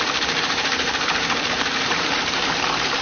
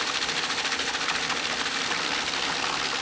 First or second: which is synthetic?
first